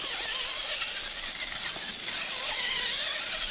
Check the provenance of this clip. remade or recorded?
recorded